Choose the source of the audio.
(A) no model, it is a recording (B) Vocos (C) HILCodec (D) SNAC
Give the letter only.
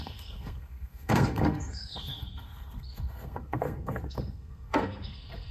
D